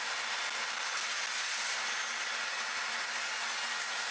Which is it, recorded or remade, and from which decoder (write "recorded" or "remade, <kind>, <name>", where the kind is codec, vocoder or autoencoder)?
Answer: recorded